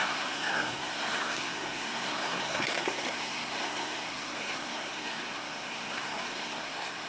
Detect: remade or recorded remade